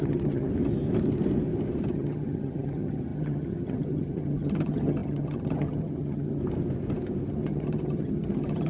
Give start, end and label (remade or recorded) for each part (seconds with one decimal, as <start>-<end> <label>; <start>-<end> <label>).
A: 0.0-0.5 remade; 0.5-1.9 recorded; 1.9-6.4 remade; 6.4-7.3 recorded; 7.3-8.7 remade